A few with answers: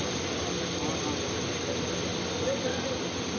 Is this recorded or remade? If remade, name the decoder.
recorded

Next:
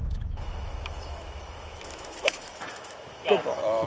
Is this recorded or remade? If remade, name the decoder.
remade, autoencoder, DAC-VAE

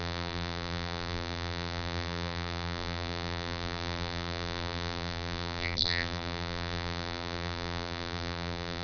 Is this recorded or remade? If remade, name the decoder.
remade, vocoder, BigVGAN v2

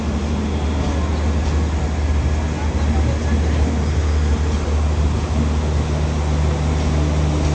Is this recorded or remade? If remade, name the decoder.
recorded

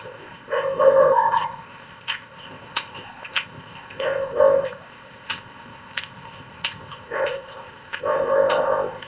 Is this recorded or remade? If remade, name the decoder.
remade, codec, ZipCodec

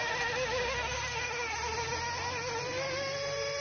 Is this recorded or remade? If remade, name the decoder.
recorded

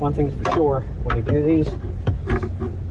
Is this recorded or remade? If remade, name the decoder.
recorded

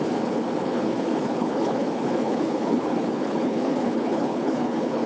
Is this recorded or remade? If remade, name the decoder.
remade, codec, HILCodec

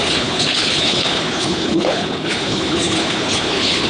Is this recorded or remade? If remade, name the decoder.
remade, codec, HILCodec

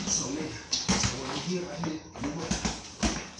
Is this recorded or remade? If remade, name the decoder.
remade, codec, DAC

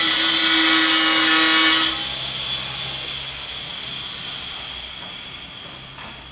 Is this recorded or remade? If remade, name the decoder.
recorded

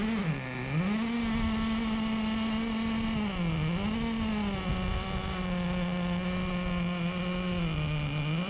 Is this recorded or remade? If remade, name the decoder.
recorded